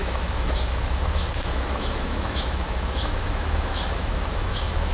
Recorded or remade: remade